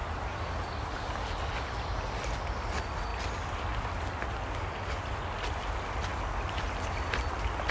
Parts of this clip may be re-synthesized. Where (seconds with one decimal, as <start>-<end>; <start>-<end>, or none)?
none